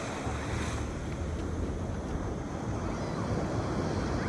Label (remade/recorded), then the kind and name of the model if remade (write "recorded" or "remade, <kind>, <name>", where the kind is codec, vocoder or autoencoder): recorded